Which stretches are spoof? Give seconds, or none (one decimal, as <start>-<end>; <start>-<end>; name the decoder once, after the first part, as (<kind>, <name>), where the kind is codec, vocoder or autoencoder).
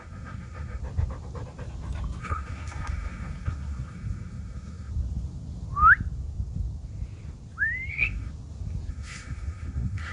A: 0.0-0.8 (codec, SNAC); 2.2-4.9; 7.9-8.3; 8.9-10.1